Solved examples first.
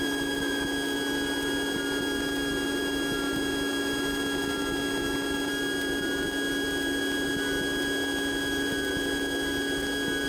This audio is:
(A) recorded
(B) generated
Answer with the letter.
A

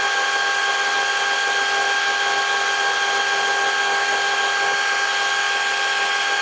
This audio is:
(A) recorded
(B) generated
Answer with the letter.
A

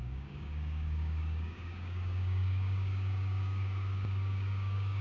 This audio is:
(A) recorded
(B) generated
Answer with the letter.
B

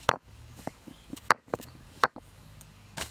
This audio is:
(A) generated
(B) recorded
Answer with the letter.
A